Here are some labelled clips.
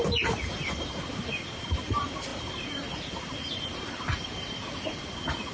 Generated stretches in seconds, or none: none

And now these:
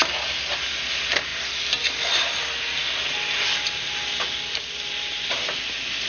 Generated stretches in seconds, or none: none

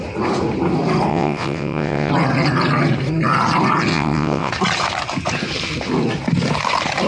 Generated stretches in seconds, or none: 1.1-2.1 (vocoder, WaveNeXt); 3.9-4.5

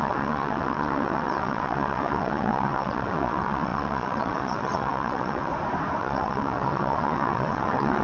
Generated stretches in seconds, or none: 0.0-5.5 (vocoder, WaveNeXt); 6.0-8.0

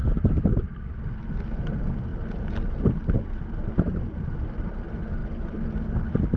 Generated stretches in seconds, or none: none

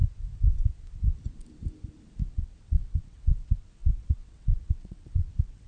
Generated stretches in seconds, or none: 2.3-5.7 (vocoder, WaveNeXt)

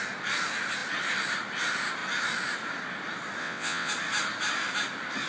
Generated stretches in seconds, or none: 3.4-3.9 (vocoder, WaveNeXt)